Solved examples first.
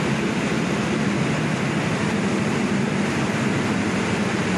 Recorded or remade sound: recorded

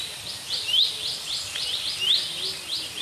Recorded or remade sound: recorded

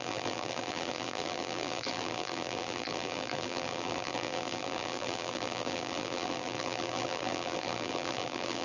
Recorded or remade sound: remade